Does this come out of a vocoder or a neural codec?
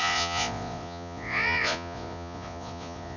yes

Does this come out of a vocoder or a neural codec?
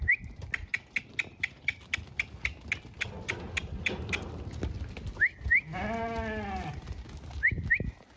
no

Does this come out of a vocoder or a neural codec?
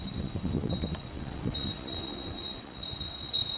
yes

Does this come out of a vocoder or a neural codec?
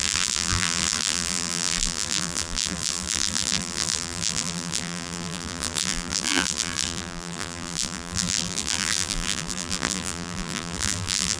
yes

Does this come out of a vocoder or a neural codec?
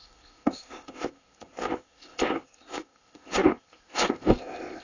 yes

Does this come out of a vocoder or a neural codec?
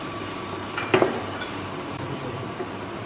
yes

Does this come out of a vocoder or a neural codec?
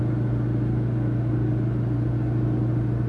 no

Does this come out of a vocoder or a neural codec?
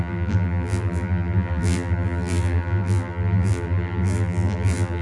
yes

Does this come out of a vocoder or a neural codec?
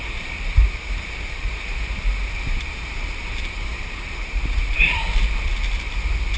yes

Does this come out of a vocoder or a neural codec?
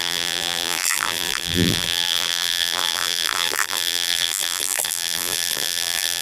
yes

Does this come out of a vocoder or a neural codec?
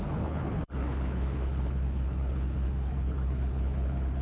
yes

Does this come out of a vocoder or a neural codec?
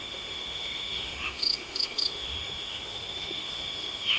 yes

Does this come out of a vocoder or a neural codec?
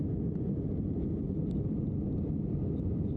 no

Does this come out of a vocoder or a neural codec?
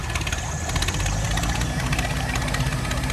no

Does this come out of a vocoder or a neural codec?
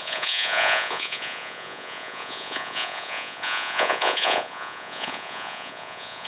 yes